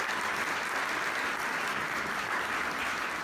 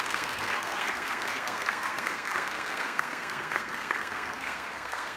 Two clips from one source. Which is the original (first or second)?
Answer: first